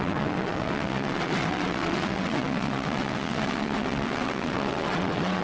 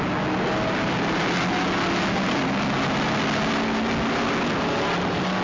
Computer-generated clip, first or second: first